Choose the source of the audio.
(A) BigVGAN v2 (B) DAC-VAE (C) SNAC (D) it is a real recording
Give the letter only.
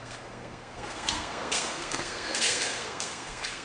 C